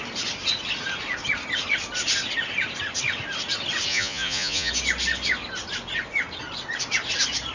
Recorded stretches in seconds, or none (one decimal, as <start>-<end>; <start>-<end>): 0.0-3.9; 4.7-7.5